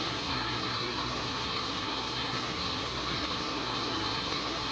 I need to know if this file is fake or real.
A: fake